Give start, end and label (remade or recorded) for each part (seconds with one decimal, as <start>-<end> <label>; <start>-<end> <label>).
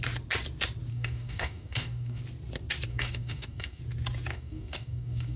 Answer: 0.0-0.9 recorded; 0.9-2.2 remade; 2.2-2.9 recorded; 2.9-3.8 remade; 3.8-4.3 recorded; 4.3-5.4 remade